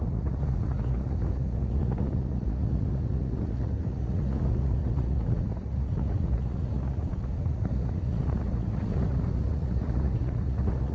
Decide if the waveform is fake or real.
fake